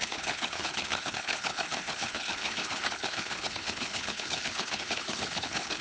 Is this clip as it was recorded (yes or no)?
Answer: no